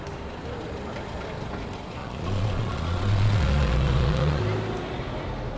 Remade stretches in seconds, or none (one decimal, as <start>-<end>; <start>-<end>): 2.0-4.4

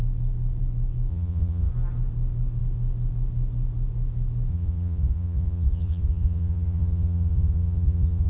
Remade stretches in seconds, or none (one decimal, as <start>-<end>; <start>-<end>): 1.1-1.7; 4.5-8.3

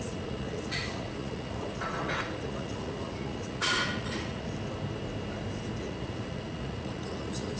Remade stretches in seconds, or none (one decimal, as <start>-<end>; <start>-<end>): 0.0-4.5; 5.8-7.6

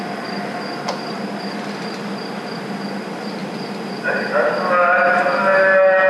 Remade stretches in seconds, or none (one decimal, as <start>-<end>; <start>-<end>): none